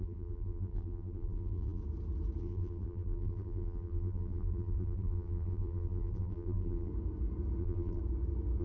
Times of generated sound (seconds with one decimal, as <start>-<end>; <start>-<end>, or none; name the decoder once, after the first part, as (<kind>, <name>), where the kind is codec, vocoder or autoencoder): 0.0-1.8 (vocoder, BigVGAN v2); 2.4-6.9; 7.6-8.0